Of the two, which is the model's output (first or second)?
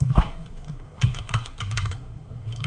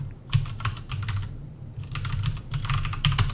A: first